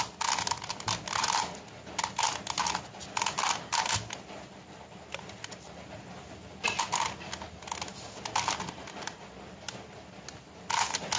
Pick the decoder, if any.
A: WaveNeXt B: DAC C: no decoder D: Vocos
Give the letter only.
C